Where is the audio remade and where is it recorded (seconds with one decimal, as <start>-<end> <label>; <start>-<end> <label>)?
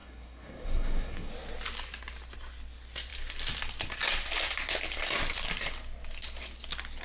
0.0-1.3 remade; 1.3-7.0 recorded